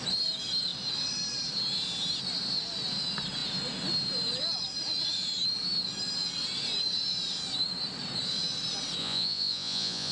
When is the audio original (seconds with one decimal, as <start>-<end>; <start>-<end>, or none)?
0.0-9.0